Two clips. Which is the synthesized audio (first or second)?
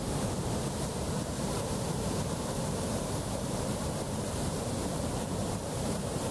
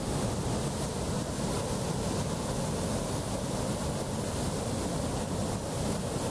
first